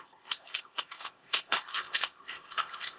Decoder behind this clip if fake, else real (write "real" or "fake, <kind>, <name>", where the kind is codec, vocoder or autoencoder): fake, codec, ZipCodec